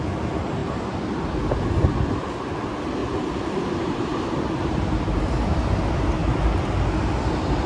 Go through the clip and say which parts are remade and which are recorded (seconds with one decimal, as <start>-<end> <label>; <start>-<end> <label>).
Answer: 0.0-3.0 recorded; 3.0-5.4 remade; 5.4-7.7 recorded